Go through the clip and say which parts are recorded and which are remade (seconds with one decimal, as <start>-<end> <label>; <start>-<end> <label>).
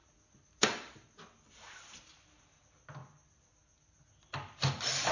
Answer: 0.0-5.1 recorded